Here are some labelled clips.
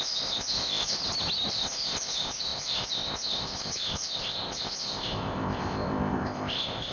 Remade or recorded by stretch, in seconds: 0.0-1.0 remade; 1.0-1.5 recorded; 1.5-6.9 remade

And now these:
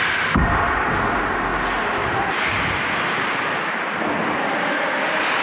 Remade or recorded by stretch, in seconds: 0.0-5.4 recorded

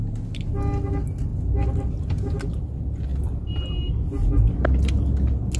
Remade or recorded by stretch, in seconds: 0.0-5.6 recorded

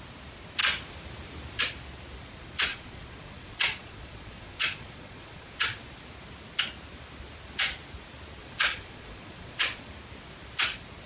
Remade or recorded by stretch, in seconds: 0.0-2.7 recorded; 2.7-5.8 remade; 5.8-8.4 recorded; 8.4-9.9 remade; 9.9-11.1 recorded